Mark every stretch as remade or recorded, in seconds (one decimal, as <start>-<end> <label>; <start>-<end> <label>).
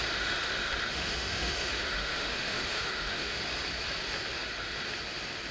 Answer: 0.0-0.9 recorded; 0.9-3.4 remade; 3.4-5.5 recorded